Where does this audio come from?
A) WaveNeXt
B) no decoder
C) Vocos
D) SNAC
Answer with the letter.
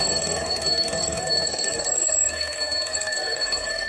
D